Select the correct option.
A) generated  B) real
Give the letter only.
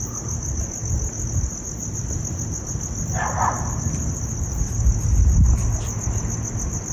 B